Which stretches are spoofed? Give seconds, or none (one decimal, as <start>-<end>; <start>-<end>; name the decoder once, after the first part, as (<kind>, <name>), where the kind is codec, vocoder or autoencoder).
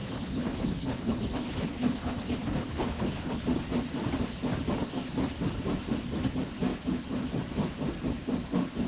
0.0-3.4 (codec, HILCodec)